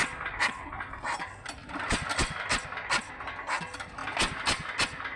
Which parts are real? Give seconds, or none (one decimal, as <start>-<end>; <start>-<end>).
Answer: 0.0-5.2

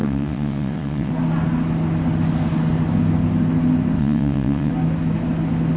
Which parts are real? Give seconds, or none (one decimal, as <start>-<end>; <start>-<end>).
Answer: 1.1-4.0; 4.7-5.8

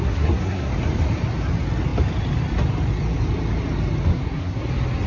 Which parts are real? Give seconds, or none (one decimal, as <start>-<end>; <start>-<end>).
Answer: 0.7-4.1; 4.6-5.1